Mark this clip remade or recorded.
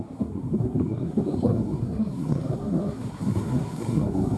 remade